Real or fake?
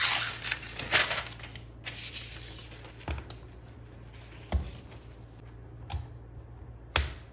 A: real